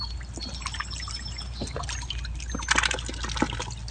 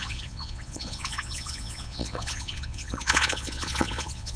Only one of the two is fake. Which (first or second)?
second